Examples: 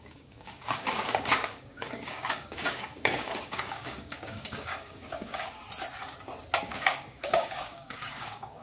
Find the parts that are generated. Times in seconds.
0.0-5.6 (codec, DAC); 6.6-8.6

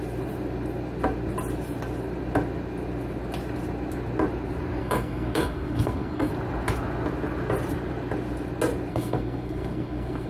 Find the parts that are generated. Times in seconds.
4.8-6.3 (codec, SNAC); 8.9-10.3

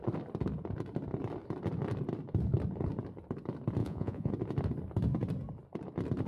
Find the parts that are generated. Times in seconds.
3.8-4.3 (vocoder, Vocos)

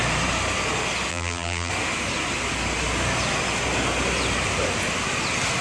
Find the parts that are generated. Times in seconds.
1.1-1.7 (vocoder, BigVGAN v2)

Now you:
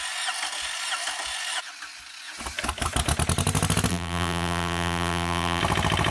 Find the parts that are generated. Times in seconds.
3.9-5.6 (vocoder, BigVGAN v2)